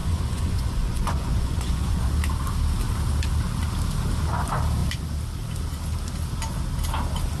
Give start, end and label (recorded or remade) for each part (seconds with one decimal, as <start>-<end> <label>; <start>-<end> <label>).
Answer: 0.0-2.1 remade; 2.1-7.4 recorded